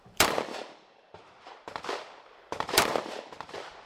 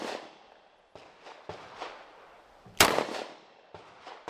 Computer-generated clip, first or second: first